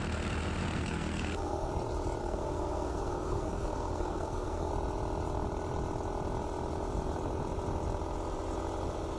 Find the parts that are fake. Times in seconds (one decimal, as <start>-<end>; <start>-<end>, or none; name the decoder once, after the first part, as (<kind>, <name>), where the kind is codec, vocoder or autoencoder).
0.6-1.7 (codec, SNAC); 2.2-4.7

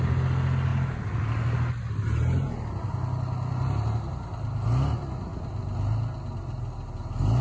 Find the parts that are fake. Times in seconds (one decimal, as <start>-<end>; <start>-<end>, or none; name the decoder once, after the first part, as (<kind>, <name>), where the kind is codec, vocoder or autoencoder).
none

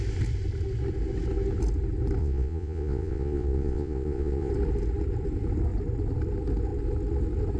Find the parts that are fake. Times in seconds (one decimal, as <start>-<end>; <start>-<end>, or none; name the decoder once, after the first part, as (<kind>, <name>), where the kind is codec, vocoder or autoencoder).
2.2-4.5 (vocoder, Vocos)